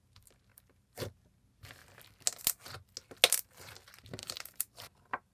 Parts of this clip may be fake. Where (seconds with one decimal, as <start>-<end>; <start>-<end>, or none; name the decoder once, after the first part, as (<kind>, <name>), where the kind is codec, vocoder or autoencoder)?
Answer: 0.5-1.1 (vocoder, BigVGAN v2); 4.2-5.3